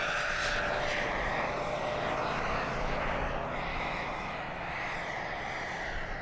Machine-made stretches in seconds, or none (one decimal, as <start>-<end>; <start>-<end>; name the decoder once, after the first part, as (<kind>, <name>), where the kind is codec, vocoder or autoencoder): 3.7-4.7 (autoencoder, DAC-VAE)